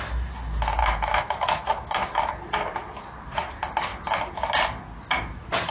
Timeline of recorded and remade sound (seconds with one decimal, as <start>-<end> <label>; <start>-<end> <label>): 0.0-0.8 recorded; 0.8-2.3 remade; 2.3-5.7 recorded